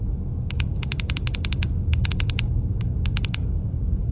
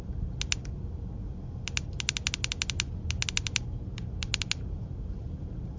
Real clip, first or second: second